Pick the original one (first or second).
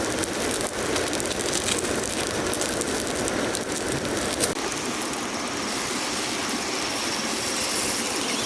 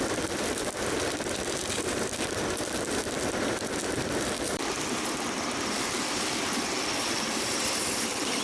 first